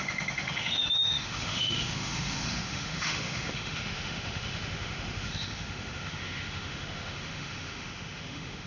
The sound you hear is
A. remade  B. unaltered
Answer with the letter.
A